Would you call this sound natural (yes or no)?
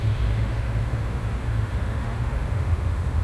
no